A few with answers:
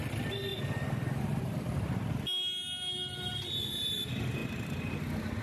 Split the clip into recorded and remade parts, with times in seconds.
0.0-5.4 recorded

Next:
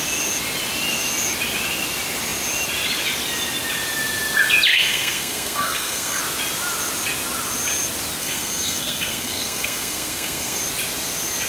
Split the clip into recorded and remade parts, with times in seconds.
0.0-4.7 recorded; 4.7-6.2 remade; 6.2-8.2 recorded; 8.2-10.6 remade; 10.6-11.5 recorded

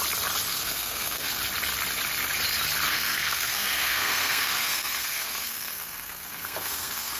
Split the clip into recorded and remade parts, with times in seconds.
0.0-0.5 recorded; 0.5-1.4 remade; 1.4-2.9 recorded; 2.9-7.2 remade

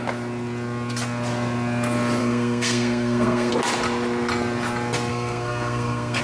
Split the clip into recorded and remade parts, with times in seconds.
0.0-2.2 recorded; 2.2-3.5 remade; 3.5-5.1 recorded; 5.1-6.2 remade

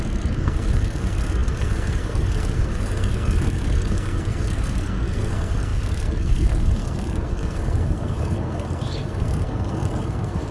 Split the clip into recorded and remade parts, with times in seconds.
0.0-10.5 remade